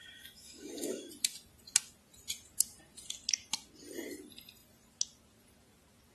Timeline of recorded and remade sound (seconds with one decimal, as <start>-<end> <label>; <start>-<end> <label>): 0.0-1.1 remade; 1.1-6.1 recorded